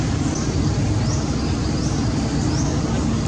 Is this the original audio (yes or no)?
yes